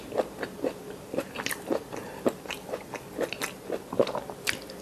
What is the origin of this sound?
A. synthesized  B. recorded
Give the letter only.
A